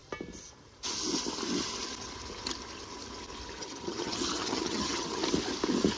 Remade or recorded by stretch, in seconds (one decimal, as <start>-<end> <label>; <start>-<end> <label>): 0.0-3.6 recorded; 3.6-5.2 remade; 5.2-6.0 recorded